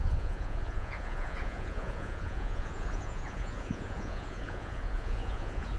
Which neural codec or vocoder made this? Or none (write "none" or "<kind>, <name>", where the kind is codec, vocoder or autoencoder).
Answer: vocoder, Vocos